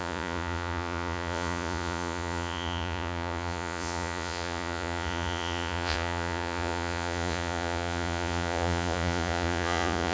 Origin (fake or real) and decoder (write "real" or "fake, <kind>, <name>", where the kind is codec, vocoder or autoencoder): fake, vocoder, Vocos